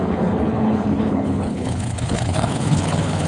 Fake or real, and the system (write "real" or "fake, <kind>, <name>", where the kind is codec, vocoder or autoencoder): fake, codec, HILCodec